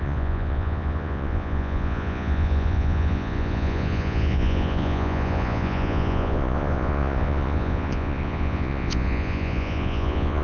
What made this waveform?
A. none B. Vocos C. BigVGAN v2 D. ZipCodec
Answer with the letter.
B